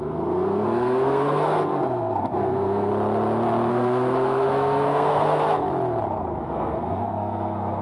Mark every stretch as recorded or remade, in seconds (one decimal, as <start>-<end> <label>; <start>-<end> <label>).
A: 0.0-2.9 remade; 2.9-3.7 recorded; 3.7-5.6 remade; 5.6-6.4 recorded; 6.4-7.8 remade